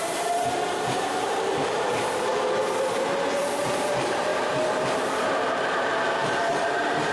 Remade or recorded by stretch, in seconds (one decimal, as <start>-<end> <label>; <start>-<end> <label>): 0.0-2.3 remade; 2.3-3.6 recorded; 3.6-7.1 remade

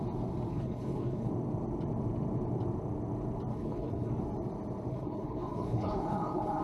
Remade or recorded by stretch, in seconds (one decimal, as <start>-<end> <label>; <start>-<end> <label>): 0.0-0.5 recorded; 0.5-1.3 remade; 1.3-3.5 recorded; 3.5-4.1 remade; 4.1-4.9 recorded; 4.9-6.6 remade

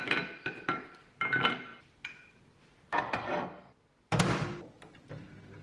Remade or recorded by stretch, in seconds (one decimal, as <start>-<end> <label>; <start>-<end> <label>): 0.0-5.6 recorded

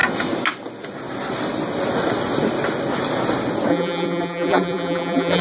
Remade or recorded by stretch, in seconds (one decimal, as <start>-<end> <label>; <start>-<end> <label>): 0.0-3.7 recorded; 3.7-5.4 remade

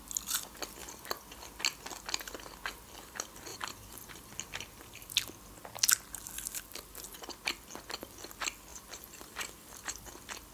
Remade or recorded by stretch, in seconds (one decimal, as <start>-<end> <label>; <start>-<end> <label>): 0.0-3.5 recorded; 3.5-4.3 remade; 4.3-8.7 recorded; 8.7-10.1 remade; 10.1-10.5 recorded